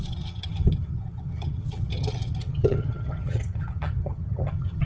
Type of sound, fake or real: fake